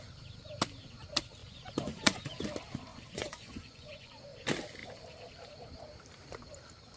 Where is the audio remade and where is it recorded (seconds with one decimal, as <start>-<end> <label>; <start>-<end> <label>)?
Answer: 0.0-1.4 recorded; 1.4-2.4 remade; 2.4-2.9 recorded; 2.9-4.1 remade; 4.1-7.0 recorded